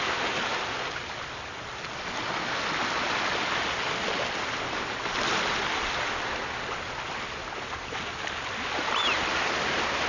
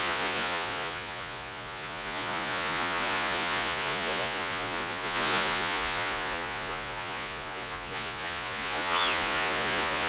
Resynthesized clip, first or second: second